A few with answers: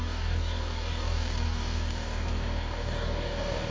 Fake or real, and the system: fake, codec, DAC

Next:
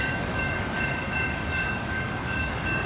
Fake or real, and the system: fake, codec, DAC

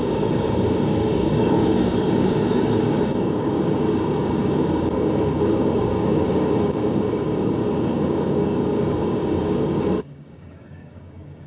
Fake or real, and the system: fake, codec, DAC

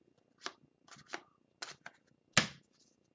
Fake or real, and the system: real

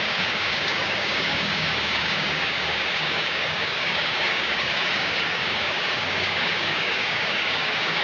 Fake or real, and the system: fake, codec, DAC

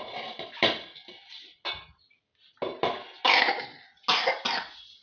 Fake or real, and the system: real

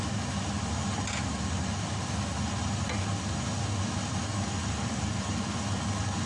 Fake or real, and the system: real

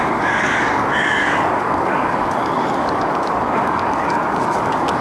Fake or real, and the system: fake, codec, DAC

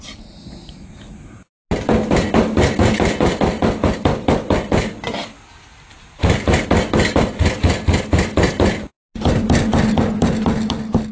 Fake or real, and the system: real